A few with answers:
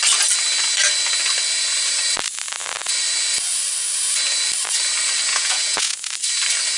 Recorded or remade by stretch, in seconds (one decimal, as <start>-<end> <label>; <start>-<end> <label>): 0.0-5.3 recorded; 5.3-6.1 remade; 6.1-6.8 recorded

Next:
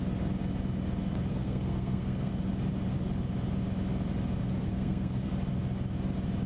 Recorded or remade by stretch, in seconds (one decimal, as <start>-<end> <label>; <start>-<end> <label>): 0.0-1.3 recorded; 1.3-2.3 remade; 2.3-4.6 recorded; 4.6-5.3 remade; 5.3-6.5 recorded

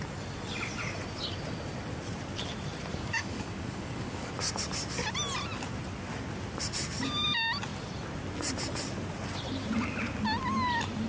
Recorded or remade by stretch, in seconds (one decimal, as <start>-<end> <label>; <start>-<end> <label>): 0.0-2.9 recorded; 2.9-4.3 remade; 4.3-11.1 recorded

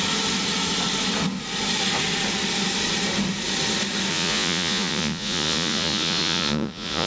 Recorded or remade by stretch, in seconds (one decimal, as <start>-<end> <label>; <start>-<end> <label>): 0.0-4.1 recorded; 4.1-7.1 remade